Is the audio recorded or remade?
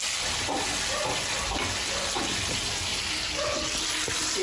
recorded